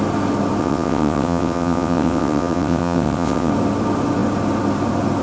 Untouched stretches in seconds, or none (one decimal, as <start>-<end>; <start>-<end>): 0.0-0.6; 3.5-5.2